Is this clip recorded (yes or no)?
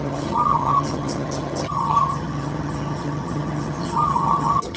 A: no